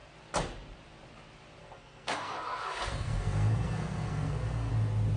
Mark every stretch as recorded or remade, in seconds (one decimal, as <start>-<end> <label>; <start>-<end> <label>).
0.0-1.6 recorded; 1.6-4.7 remade; 4.7-5.2 recorded